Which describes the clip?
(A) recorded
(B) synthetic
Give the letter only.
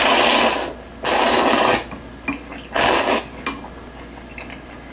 A